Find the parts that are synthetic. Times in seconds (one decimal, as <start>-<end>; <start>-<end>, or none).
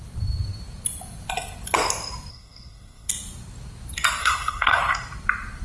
2.3-3.1; 4.2-4.8